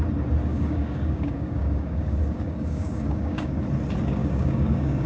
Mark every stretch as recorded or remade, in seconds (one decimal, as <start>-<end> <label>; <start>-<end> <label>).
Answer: 0.0-0.5 recorded; 0.5-3.6 remade; 3.6-4.2 recorded; 4.2-5.1 remade